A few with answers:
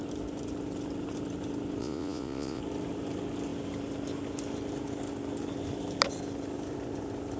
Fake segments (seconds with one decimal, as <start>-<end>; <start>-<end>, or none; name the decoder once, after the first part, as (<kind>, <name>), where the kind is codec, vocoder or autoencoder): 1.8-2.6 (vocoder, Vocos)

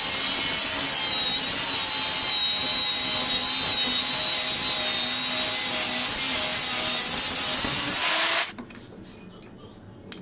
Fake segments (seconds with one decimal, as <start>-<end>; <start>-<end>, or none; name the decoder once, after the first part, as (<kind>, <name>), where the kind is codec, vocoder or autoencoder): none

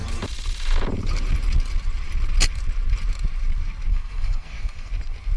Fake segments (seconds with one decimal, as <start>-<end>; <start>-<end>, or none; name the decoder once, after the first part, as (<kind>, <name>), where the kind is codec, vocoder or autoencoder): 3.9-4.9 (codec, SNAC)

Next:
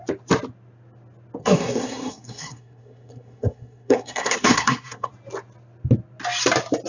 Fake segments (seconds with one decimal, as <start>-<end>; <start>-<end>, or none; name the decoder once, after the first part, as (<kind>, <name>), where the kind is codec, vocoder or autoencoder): 1.4-5.1 (codec, SNAC)

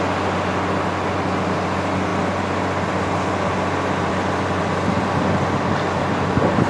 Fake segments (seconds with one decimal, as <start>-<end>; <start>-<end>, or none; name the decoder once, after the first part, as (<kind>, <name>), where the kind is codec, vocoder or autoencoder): none

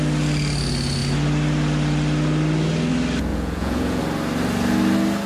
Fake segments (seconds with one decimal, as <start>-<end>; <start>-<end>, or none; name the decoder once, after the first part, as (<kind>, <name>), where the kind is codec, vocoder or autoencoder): 3.3-4.0 (vocoder, Vocos)